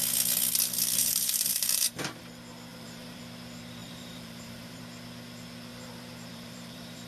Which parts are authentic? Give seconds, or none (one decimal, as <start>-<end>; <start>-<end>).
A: 0.0-1.0; 2.2-2.7; 3.2-3.8; 4.8-5.7